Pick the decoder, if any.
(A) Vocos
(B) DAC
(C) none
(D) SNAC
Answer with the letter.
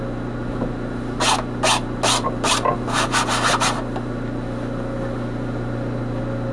C